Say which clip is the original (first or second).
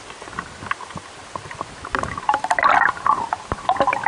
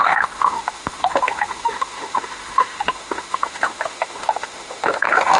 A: first